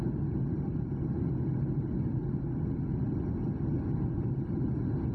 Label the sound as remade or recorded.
recorded